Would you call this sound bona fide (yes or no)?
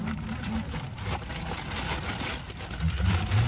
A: yes